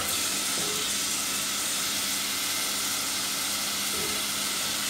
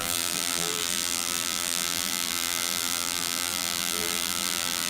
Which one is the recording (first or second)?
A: first